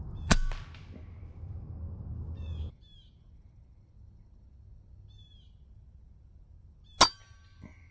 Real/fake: real